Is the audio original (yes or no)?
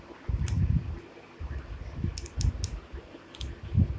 yes